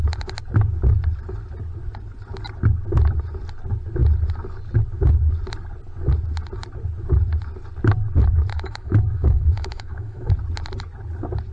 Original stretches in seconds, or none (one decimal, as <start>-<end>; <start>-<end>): 0.0-8.5; 10.3-11.5